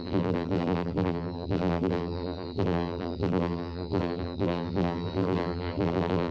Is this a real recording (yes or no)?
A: no